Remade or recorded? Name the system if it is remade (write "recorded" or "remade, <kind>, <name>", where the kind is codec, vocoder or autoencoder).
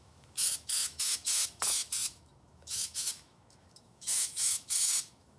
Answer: remade, autoencoder, DAC-VAE